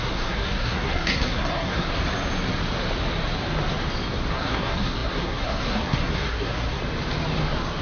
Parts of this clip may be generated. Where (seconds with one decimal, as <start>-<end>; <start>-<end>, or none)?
0.0-1.9; 4.3-6.8